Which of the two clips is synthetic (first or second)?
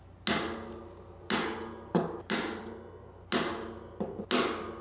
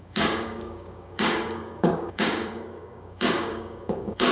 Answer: second